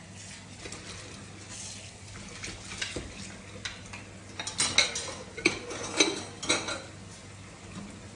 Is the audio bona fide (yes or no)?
yes